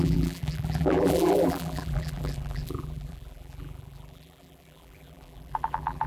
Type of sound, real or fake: fake